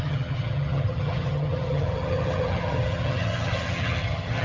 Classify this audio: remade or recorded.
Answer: remade